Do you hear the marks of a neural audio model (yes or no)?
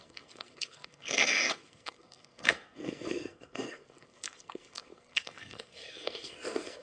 yes